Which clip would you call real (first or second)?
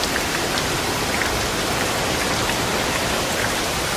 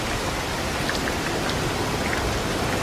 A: second